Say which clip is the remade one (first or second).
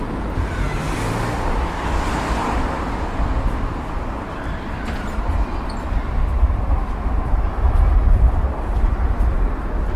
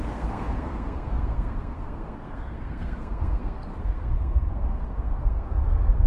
second